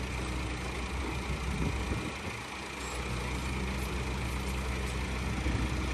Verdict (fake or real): real